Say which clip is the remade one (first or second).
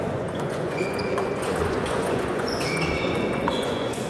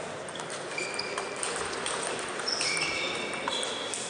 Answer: first